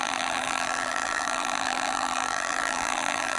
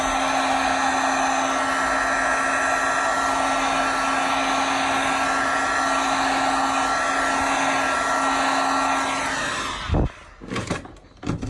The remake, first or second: first